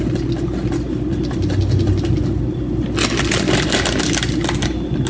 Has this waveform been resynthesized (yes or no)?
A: no